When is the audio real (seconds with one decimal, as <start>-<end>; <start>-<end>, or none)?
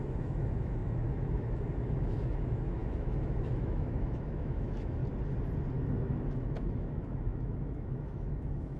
5.0-5.9